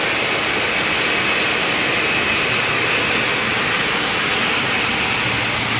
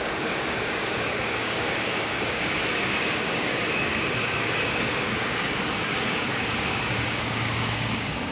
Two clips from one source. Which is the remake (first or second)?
second